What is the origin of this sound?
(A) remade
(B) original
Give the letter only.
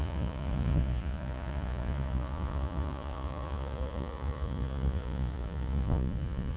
A